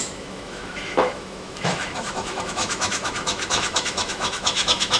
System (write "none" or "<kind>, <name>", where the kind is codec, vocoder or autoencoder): autoencoder, DAC-VAE